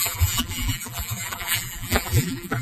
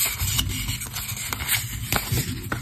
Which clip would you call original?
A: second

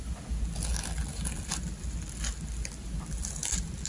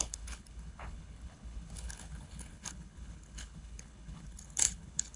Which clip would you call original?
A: first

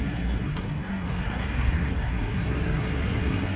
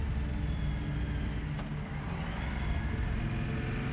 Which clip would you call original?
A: second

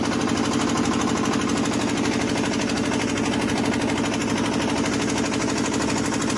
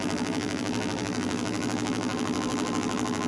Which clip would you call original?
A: first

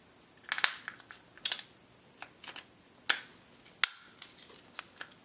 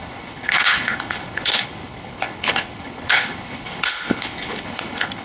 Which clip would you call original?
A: first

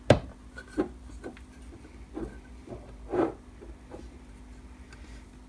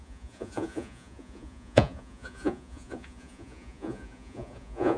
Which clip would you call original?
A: first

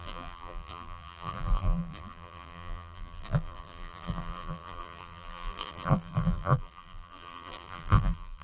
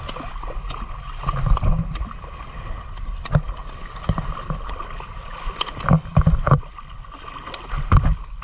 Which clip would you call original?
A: second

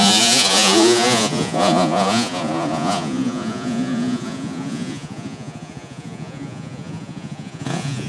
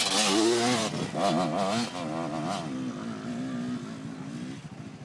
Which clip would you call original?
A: second